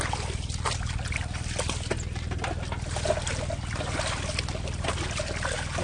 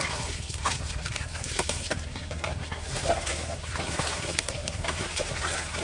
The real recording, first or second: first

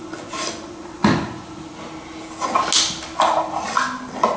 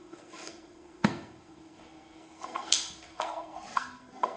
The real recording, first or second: first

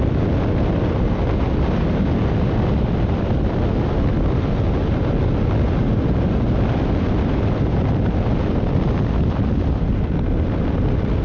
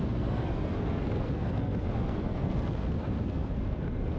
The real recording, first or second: first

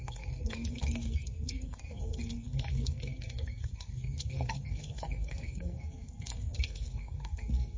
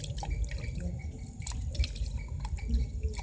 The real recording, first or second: second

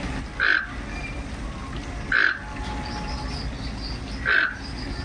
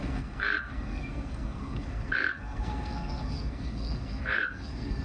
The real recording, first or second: first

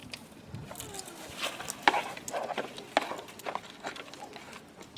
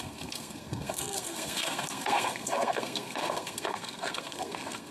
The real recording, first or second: first